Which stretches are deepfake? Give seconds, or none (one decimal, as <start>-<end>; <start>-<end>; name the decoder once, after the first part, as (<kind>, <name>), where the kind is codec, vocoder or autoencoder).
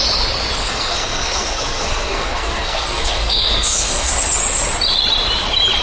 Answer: 0.6-4.1 (codec, SNAC)